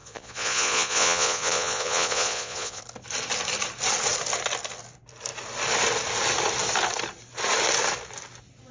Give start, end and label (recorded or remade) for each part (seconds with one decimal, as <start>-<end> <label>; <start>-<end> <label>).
0.0-2.8 remade; 2.8-8.7 recorded